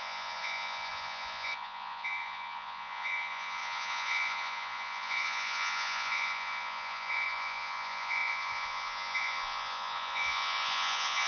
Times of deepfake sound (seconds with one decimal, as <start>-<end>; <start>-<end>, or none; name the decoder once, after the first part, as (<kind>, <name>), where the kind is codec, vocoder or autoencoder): 0.0-11.3 (vocoder, Vocos)